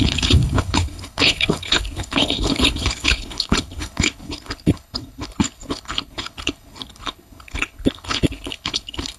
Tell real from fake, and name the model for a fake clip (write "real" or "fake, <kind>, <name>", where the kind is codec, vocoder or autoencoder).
fake, codec, HILCodec